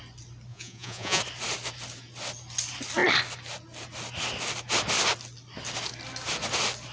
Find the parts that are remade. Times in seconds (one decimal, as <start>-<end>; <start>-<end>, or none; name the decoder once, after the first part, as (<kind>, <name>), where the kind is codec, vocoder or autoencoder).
0.5-1.2 (vocoder, Vocos)